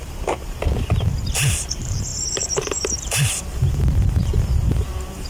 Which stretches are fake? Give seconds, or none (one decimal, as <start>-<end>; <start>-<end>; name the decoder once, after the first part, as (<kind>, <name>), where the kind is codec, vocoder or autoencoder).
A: 0.0-0.7 (vocoder, BigVGAN v2); 1.6-5.3

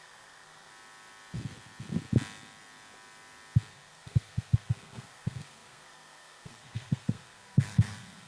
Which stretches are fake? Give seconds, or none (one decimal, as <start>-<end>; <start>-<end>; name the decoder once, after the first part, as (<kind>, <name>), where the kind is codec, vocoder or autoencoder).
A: 0.0-0.7 (codec, SNAC); 3.7-8.3